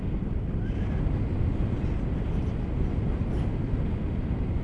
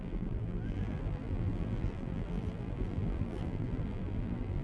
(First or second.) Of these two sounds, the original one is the first